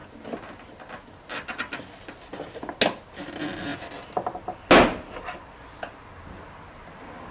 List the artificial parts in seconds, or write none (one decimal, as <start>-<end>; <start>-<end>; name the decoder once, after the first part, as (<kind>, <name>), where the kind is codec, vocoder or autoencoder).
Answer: none